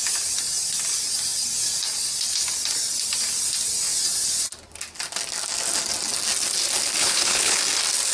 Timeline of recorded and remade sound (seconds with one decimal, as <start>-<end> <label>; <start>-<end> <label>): 0.0-7.0 recorded; 7.0-7.6 remade; 7.6-8.1 recorded